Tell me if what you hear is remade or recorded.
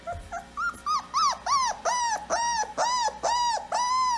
recorded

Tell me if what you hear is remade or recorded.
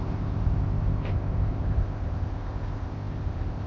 remade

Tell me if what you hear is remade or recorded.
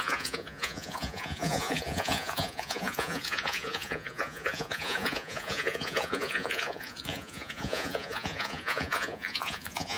remade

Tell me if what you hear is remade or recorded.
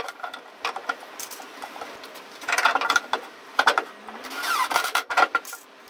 remade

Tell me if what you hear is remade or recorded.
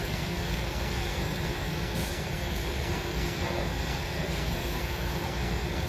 remade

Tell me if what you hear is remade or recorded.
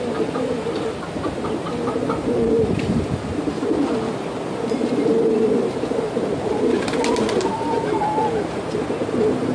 recorded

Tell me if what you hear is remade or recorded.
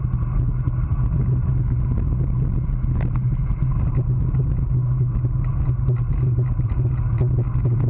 recorded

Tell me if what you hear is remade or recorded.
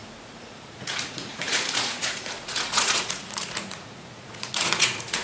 remade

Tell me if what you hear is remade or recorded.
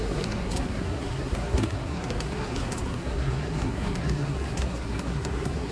remade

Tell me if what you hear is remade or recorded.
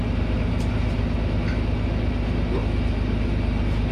recorded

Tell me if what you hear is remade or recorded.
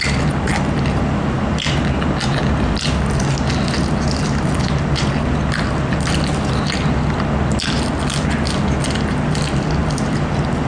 recorded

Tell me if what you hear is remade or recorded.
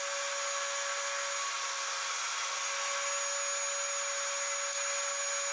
recorded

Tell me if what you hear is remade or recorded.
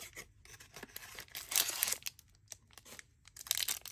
recorded